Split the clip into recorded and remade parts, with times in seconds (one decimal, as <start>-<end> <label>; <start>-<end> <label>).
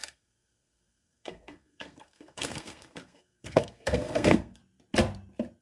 0.0-4.6 remade; 4.6-5.6 recorded